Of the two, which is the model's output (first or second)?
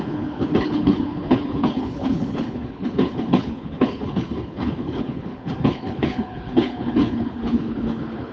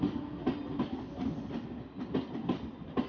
first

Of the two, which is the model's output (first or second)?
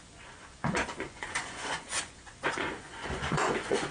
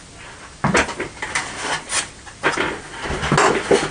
first